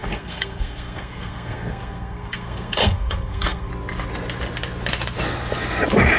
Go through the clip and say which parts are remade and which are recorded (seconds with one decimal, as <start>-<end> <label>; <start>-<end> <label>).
0.0-3.7 remade; 3.7-6.2 recorded